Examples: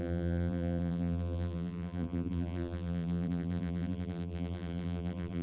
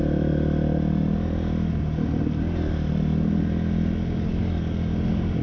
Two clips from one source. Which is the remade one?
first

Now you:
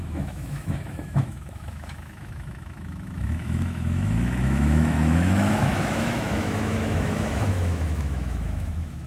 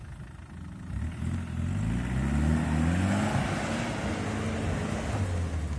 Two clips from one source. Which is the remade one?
first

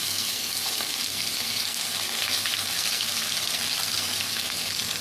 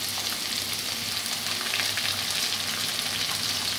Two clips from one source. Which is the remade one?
first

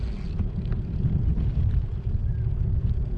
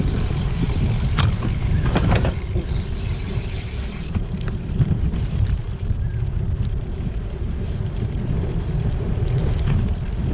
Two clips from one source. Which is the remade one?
second